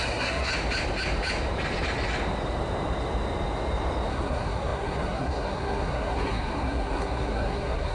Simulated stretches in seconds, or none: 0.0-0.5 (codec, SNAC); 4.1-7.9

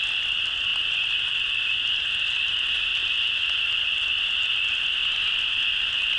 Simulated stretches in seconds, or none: none

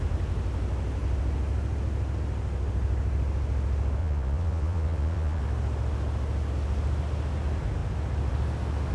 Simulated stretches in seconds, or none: 4.0-5.4 (vocoder, Vocos)

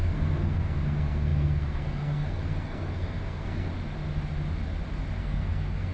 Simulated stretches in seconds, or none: 0.0-3.7 (codec, SNAC); 5.2-5.9

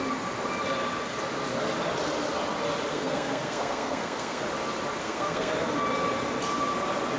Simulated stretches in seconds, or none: 2.9-4.4 (codec, SNAC); 5.0-5.5